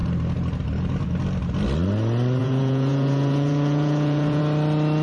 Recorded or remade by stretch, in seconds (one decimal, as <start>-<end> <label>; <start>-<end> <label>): 0.0-2.4 recorded; 2.4-4.4 remade; 4.4-5.0 recorded